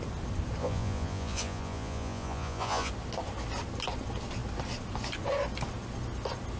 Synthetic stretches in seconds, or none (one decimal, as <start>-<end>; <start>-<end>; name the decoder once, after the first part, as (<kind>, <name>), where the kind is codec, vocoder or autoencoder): 0.6-2.9 (vocoder, Vocos)